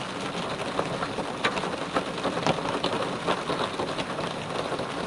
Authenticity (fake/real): real